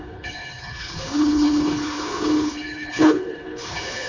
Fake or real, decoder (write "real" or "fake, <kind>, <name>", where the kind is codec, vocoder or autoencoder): fake, codec, HILCodec